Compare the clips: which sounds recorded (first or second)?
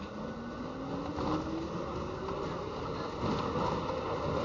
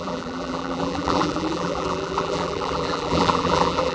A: first